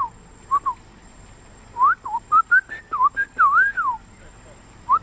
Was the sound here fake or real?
real